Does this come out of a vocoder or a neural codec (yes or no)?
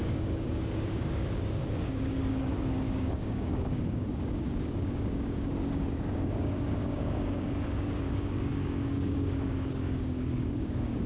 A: yes